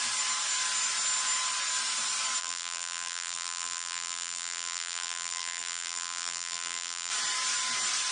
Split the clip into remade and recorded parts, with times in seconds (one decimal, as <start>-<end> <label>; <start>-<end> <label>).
0.0-2.4 recorded; 2.4-7.1 remade; 7.1-8.1 recorded